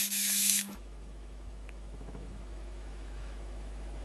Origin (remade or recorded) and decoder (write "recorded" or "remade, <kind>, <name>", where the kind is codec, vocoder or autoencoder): remade, autoencoder, DAC-VAE